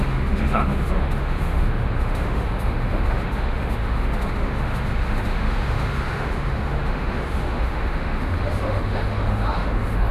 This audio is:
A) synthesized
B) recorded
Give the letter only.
A